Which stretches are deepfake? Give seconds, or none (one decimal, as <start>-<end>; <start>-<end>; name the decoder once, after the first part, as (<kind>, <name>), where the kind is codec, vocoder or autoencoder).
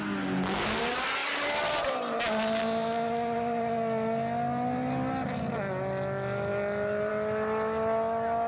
none